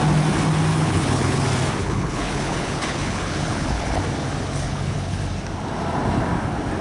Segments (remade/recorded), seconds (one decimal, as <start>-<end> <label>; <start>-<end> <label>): 0.0-0.7 recorded; 0.7-1.4 remade; 1.4-1.8 recorded; 1.8-4.0 remade; 4.0-4.5 recorded; 4.5-5.2 remade; 5.2-6.8 recorded